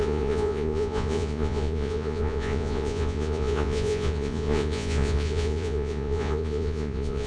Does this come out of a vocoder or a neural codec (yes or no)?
yes